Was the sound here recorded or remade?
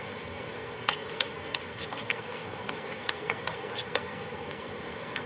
remade